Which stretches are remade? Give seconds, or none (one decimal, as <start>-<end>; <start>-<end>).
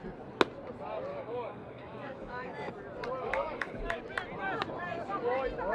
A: 1.1-2.7; 3.2-4.0